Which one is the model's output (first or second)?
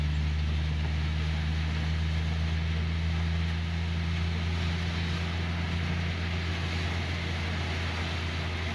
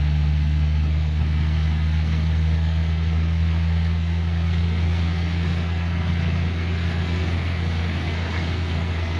second